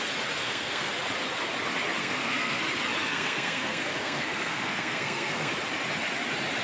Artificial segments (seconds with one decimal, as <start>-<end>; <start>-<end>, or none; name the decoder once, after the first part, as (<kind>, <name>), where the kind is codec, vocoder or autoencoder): 0.4-0.9 (codec, SNAC); 2.0-2.6; 3.1-5.5